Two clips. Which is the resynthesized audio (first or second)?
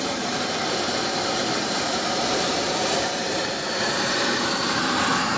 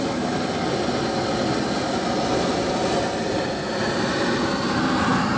first